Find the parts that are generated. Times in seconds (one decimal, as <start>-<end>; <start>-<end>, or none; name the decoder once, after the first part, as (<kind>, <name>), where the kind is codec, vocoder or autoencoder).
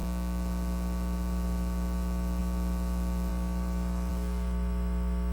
3.3-4.1 (autoencoder, DAC-VAE)